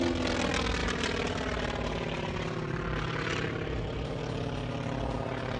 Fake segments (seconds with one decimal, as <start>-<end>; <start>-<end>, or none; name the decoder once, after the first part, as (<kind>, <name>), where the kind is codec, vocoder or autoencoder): 0.8-4.2 (vocoder, BigVGAN v2)